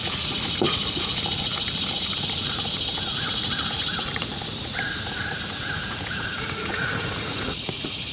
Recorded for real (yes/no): no